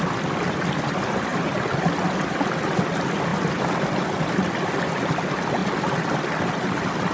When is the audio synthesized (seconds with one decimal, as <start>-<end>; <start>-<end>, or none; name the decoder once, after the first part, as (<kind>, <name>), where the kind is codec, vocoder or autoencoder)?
none